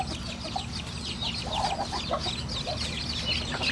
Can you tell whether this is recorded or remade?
recorded